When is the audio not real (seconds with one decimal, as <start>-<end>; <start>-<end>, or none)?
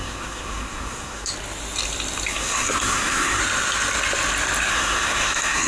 0.0-1.3; 2.3-3.4; 4.7-5.7